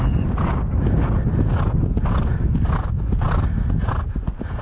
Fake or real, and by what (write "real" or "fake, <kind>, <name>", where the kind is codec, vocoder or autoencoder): real